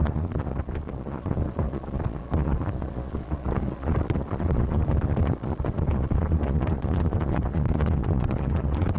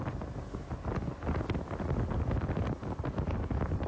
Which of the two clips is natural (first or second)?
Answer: second